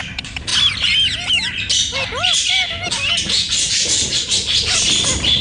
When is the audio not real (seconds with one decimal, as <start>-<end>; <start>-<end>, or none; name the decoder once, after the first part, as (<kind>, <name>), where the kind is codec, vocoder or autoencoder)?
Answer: none